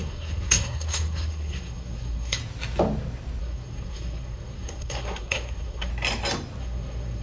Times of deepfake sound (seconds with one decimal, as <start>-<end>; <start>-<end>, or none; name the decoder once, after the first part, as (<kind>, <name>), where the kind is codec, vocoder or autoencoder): 0.0-2.4 (codec, SNAC); 3.4-5.9; 6.6-7.2